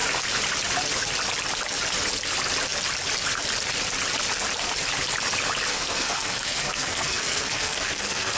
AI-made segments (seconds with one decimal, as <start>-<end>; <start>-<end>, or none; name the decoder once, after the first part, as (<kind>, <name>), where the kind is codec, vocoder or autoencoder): 5.7-8.4 (codec, SNAC)